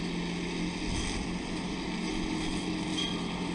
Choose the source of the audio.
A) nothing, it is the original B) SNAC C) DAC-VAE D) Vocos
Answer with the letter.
A